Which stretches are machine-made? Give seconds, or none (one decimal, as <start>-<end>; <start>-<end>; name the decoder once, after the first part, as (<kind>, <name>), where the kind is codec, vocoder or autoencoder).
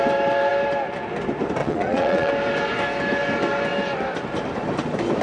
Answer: 1.6-2.3 (vocoder, Vocos)